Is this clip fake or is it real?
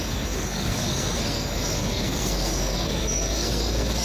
fake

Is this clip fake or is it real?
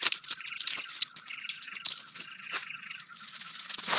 real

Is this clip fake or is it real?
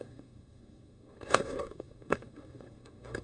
fake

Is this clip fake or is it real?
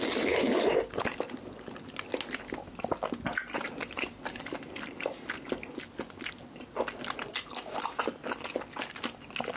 real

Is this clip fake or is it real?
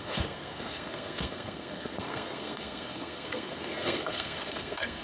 fake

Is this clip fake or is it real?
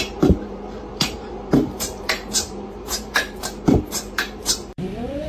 fake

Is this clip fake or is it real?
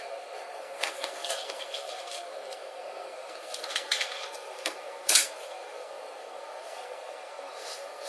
fake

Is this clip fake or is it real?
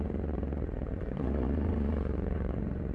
fake